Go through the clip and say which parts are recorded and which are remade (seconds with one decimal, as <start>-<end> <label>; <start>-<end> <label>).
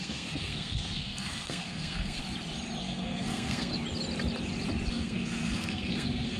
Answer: 0.0-2.2 remade; 2.2-2.8 recorded; 2.8-3.7 remade; 3.7-4.9 recorded; 4.9-6.4 remade